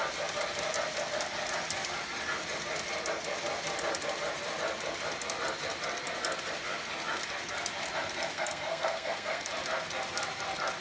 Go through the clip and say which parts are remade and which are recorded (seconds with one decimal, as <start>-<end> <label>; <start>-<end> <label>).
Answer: 0.0-8.3 recorded; 8.3-9.5 remade; 9.5-10.8 recorded